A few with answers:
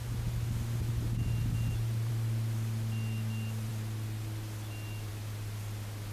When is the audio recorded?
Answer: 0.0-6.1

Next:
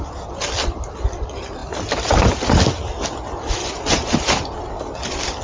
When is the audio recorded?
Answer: 0.0-5.4

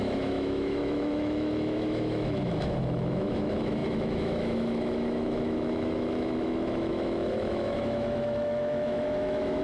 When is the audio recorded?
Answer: none